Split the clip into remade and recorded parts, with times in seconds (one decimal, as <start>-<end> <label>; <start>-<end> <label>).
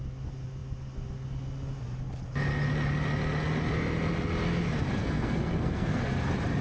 0.0-5.0 recorded; 5.0-6.0 remade; 6.0-6.6 recorded